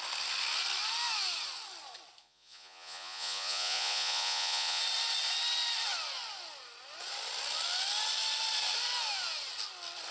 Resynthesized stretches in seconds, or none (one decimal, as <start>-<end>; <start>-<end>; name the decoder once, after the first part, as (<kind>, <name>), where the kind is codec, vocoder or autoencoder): 2.2-4.8 (vocoder, Vocos)